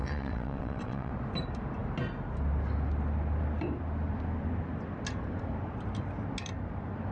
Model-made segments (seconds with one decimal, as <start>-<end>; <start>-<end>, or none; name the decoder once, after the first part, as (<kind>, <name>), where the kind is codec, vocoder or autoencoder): 0.0-1.1 (vocoder, WaveNeXt)